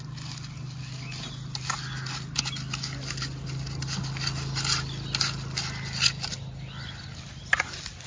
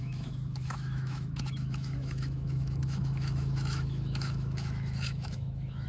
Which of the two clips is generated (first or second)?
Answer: second